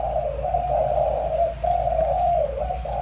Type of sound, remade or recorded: recorded